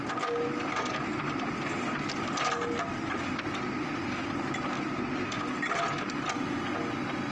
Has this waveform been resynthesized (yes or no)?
no